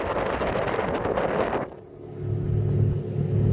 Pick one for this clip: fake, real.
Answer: real